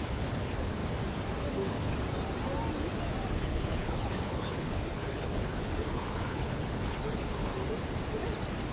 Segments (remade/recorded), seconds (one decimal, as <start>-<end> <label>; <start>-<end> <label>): 0.0-0.8 remade; 0.8-1.5 recorded; 1.5-1.9 remade; 1.9-3.3 recorded; 3.3-7.5 remade; 7.5-8.7 recorded